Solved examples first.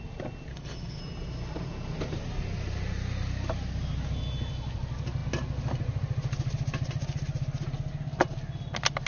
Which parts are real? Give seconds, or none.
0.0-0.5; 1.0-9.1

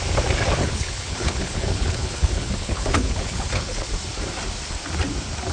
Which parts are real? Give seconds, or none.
0.0-0.6; 3.9-5.5

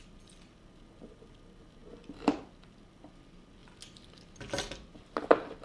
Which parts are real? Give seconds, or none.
0.0-5.6

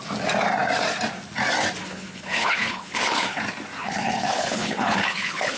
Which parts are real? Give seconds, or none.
0.0-1.8; 3.4-3.8

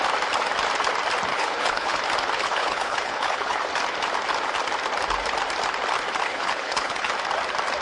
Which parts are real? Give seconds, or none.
0.0-1.3; 2.0-2.4; 3.6-6.3; 7.1-7.8